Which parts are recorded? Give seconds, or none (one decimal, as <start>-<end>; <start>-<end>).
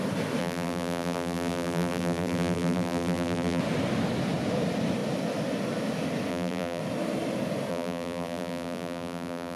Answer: 0.0-0.4; 3.6-6.3; 6.8-7.7